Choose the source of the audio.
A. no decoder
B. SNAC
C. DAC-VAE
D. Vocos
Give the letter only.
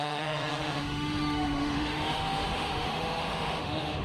C